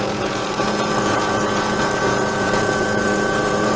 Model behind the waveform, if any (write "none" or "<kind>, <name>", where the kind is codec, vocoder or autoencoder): vocoder, Vocos